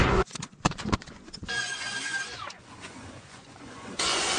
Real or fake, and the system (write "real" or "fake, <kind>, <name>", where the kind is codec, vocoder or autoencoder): fake, vocoder, Vocos